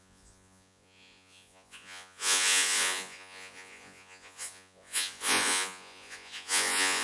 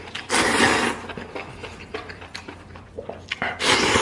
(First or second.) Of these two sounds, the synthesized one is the first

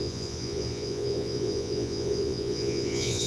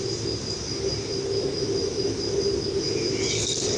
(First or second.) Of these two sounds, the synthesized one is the first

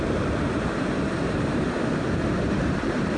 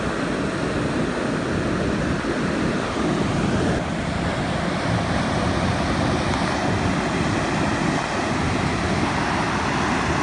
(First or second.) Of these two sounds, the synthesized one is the first